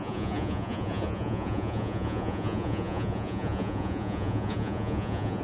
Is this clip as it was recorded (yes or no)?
no